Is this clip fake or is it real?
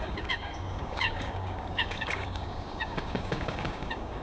fake